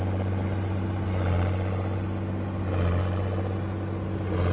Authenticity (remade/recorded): recorded